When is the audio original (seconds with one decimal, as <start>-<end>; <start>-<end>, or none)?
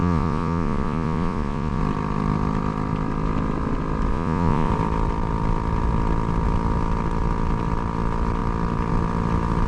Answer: 1.8-4.1; 4.7-9.7